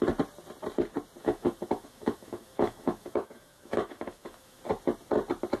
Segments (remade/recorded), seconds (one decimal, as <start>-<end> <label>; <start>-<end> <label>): 0.0-1.2 recorded; 1.2-4.6 remade; 4.6-5.6 recorded